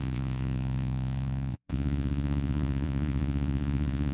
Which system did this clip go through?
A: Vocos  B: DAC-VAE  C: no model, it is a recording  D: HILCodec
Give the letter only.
A